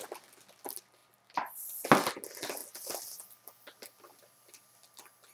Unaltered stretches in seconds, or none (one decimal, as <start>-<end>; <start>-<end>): 0.0-5.3